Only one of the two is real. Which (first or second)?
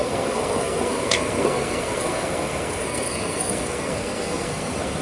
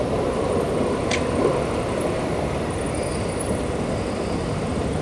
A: second